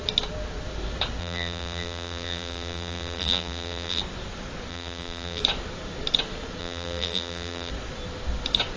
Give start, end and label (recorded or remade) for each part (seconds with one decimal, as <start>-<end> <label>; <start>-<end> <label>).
0.0-1.2 recorded; 1.2-4.0 remade; 4.0-4.7 recorded; 4.7-5.4 remade; 5.4-6.6 recorded; 6.6-7.7 remade; 7.7-8.8 recorded